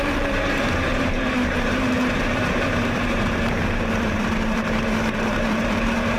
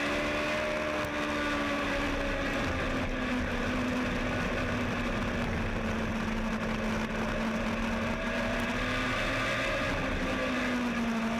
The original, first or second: second